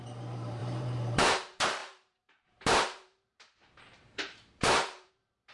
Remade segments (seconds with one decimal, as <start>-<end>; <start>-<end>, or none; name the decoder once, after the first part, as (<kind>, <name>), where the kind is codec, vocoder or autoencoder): 0.0-5.5 (vocoder, BigVGAN v2)